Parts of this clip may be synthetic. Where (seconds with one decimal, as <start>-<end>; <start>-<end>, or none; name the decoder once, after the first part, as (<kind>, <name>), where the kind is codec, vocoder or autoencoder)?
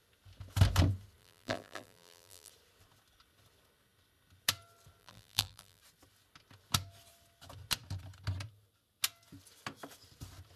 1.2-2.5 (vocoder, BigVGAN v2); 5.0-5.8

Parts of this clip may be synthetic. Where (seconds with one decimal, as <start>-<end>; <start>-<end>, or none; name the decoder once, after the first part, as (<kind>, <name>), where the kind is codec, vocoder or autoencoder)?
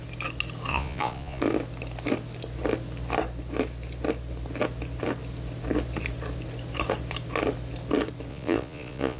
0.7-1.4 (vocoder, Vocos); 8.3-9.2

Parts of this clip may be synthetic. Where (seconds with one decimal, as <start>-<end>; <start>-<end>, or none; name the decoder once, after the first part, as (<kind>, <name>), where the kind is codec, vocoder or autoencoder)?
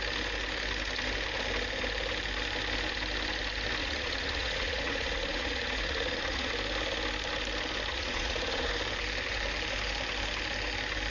3.8-6.5 (vocoder, Vocos); 7.9-8.7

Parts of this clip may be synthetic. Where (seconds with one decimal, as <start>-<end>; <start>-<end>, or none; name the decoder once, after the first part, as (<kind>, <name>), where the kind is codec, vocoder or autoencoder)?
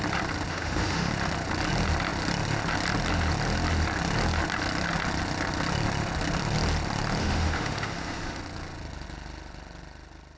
0.5-1.1 (autoencoder, DAC-VAE); 7.2-8.4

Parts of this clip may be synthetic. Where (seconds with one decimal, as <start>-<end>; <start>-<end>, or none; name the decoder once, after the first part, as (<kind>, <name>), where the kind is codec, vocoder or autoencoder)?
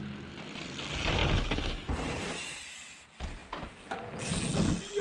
none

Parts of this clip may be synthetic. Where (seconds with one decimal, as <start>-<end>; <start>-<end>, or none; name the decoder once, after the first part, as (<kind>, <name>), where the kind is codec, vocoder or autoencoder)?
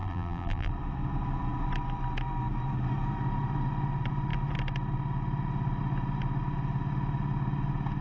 0.0-0.7 (vocoder, BigVGAN v2)